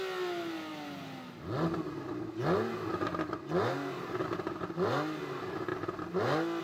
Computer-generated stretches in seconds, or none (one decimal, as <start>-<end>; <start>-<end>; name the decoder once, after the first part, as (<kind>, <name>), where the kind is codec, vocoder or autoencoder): none